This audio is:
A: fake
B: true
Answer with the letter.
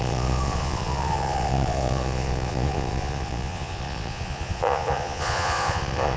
A